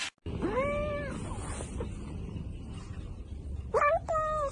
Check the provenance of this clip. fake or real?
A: real